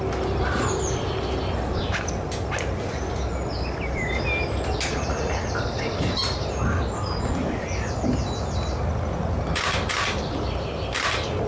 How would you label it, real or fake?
real